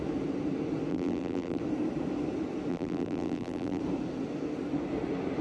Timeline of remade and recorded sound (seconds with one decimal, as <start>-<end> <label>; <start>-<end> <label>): 0.0-0.9 recorded; 0.9-1.6 remade; 1.6-2.7 recorded; 2.7-3.8 remade; 3.8-5.4 recorded